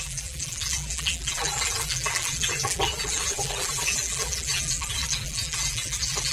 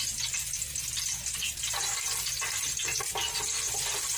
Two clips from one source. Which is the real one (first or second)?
second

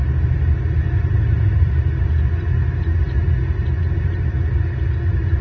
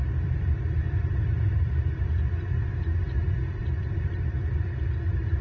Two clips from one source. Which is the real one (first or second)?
first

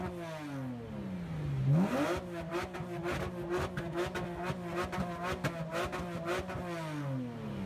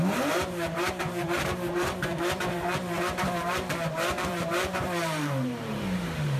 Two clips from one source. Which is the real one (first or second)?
first